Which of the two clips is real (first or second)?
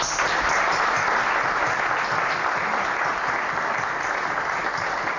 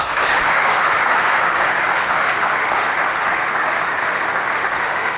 first